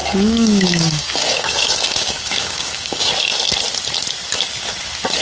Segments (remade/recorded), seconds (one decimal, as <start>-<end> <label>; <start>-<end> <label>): 0.0-3.1 remade; 3.1-5.2 recorded

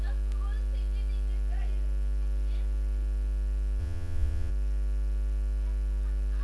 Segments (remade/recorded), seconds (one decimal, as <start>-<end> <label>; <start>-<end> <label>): 0.0-3.8 recorded; 3.8-4.5 remade; 4.5-6.4 recorded

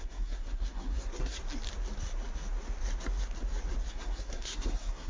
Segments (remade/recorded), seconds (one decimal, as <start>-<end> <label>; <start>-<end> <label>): 0.0-1.4 remade; 1.4-3.9 recorded; 3.9-5.1 remade

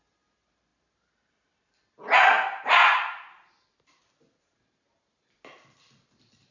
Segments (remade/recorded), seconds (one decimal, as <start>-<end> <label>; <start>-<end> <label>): 0.0-6.5 recorded

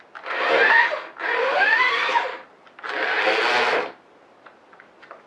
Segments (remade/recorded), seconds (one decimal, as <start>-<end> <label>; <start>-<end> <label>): 0.0-1.4 recorded; 1.4-1.9 remade; 1.9-5.3 recorded

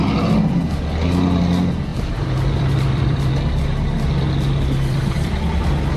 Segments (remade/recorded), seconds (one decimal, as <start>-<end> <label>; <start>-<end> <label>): 0.0-1.9 recorded; 1.9-3.3 remade; 3.3-4.9 recorded; 4.9-5.6 remade; 5.6-6.0 recorded

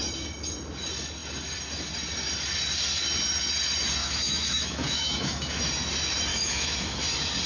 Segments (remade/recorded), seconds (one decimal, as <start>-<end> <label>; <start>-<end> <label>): 0.0-4.0 recorded; 4.0-5.6 remade; 5.6-6.3 recorded; 6.3-7.0 remade; 7.0-7.5 recorded